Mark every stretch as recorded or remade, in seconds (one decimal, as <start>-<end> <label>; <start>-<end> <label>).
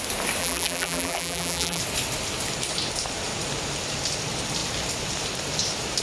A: 0.0-0.4 recorded; 0.4-1.8 remade; 1.8-6.0 recorded